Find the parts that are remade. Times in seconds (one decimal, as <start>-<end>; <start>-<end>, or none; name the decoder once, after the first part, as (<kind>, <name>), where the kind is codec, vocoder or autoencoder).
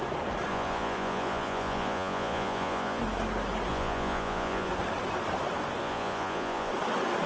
0.5-3.0 (vocoder, Vocos); 3.7-4.7; 5.8-6.7